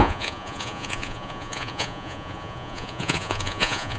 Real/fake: fake